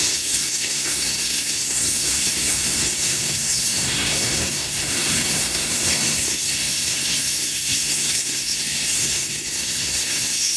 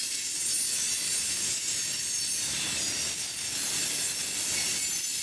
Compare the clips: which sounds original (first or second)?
second